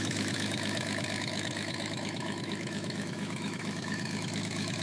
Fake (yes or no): yes